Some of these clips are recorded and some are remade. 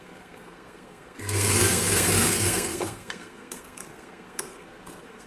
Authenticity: remade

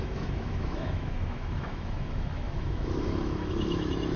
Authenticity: remade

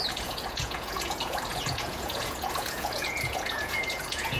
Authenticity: remade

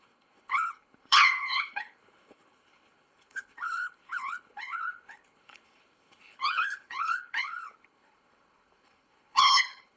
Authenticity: remade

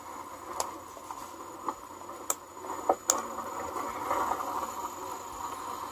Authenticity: recorded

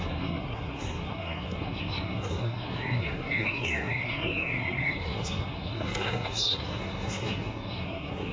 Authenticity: remade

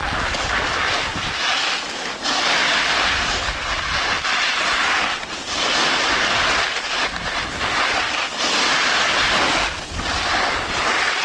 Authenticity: recorded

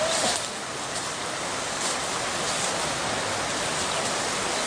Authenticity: recorded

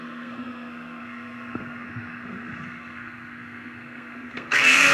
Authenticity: remade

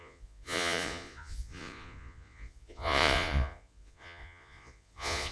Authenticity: remade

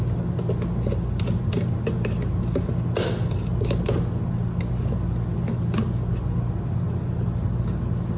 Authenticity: recorded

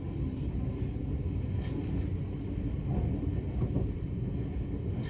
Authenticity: recorded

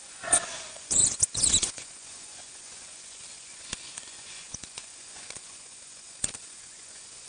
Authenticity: remade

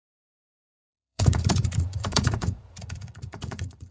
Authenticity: remade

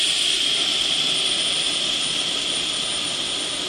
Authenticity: recorded